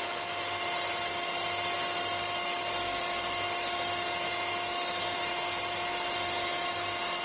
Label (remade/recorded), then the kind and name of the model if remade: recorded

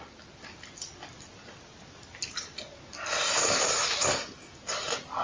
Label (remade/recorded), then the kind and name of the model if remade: recorded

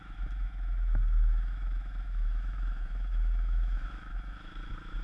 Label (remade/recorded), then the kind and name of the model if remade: remade, autoencoder, DAC-VAE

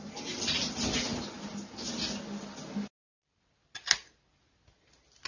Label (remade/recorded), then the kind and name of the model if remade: recorded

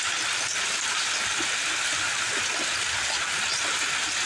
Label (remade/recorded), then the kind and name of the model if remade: recorded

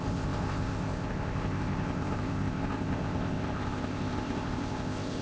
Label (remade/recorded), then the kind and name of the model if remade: remade, codec, ZipCodec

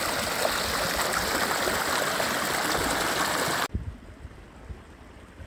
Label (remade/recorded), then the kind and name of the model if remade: recorded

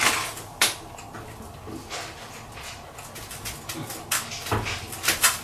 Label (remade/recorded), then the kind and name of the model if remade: recorded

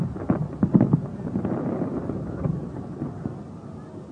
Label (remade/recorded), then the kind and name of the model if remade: recorded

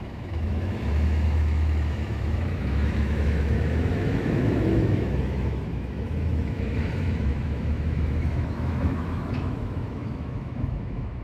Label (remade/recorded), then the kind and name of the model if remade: remade, autoencoder, DAC-VAE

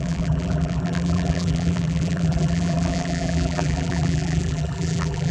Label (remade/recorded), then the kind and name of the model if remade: remade, vocoder, BigVGAN v2